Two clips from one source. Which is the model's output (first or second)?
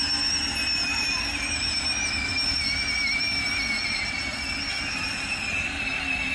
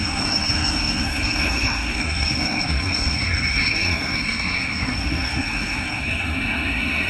second